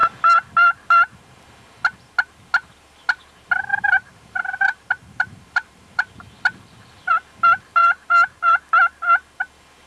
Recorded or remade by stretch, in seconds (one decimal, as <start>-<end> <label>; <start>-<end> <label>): 0.0-3.7 recorded; 3.7-6.1 remade; 6.1-7.8 recorded; 7.8-8.6 remade; 8.6-9.9 recorded